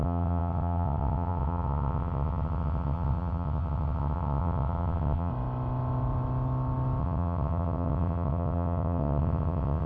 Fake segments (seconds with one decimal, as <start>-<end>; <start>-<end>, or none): 0.0-5.3; 7.0-9.9